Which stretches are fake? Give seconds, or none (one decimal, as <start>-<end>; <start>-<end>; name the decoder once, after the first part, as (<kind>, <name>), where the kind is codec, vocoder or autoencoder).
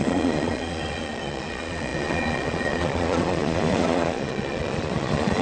0.0-5.4 (vocoder, Vocos)